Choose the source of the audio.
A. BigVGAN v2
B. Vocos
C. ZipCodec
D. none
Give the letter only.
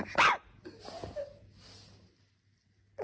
D